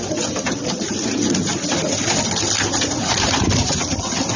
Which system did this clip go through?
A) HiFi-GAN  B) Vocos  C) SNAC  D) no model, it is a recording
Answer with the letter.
D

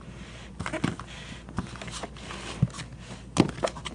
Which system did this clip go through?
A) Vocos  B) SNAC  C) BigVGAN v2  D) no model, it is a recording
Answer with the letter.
D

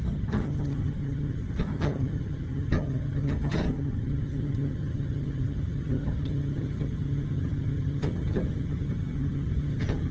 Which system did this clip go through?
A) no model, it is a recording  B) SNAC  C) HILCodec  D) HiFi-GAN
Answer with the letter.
D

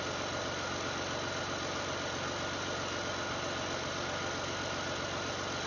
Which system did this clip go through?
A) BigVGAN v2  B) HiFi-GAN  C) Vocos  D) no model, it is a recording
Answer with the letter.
D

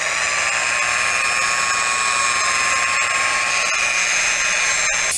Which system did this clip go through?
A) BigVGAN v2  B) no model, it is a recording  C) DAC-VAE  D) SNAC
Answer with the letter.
B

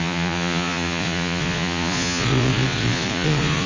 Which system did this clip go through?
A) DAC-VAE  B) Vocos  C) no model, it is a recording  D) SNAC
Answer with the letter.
B